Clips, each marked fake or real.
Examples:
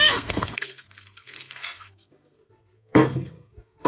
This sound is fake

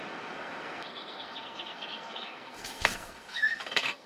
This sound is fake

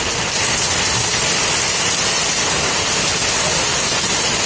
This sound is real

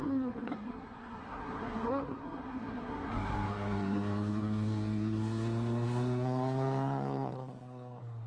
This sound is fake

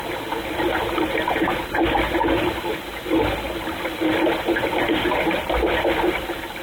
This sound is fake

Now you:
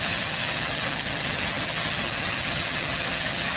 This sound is fake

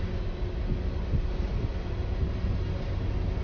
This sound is real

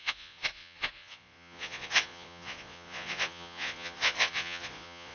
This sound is fake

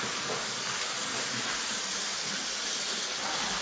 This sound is real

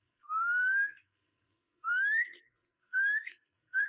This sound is fake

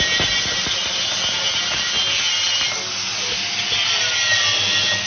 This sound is real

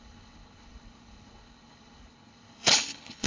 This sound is fake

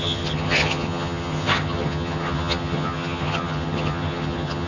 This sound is fake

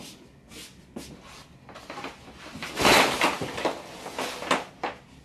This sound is real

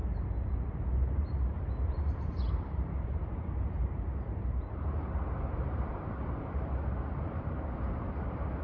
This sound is fake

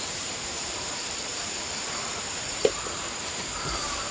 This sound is fake